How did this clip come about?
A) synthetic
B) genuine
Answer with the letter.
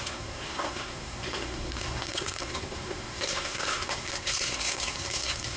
A